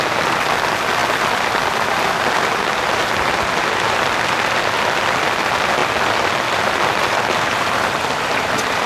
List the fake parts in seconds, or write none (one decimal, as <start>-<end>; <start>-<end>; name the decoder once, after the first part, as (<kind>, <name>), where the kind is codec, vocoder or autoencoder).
none